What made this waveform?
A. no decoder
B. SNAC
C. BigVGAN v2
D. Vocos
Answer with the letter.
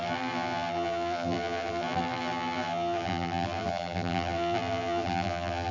C